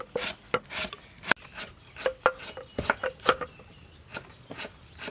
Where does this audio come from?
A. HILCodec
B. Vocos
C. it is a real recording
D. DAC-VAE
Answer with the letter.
C